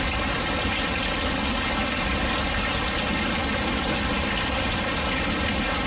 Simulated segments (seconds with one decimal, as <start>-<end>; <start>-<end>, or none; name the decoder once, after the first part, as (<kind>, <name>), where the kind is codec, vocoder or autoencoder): none